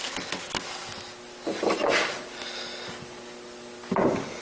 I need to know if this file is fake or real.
real